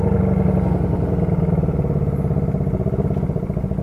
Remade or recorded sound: recorded